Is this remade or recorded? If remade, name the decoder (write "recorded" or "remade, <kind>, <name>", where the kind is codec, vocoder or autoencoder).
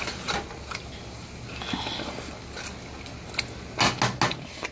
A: recorded